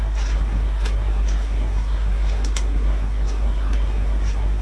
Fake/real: fake